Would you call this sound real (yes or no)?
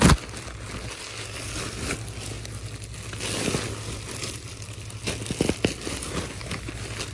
yes